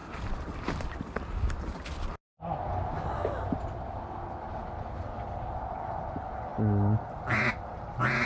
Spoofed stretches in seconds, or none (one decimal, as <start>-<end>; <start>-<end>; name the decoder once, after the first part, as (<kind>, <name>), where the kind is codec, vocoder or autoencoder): none